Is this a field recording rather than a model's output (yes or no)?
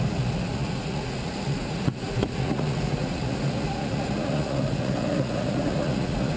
no